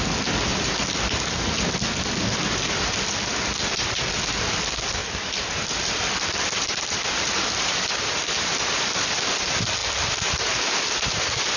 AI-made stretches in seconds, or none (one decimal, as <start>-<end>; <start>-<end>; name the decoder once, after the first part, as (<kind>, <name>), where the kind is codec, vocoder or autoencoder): 5.0-9.1 (vocoder, BigVGAN v2)